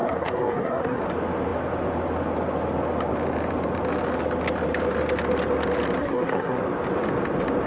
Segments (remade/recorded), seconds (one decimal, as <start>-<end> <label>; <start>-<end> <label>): 0.0-1.0 remade; 1.0-6.0 recorded; 6.0-6.6 remade; 6.6-7.7 recorded